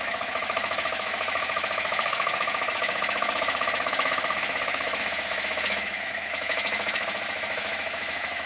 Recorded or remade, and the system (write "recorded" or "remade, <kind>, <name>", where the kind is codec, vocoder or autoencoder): remade, autoencoder, DAC-VAE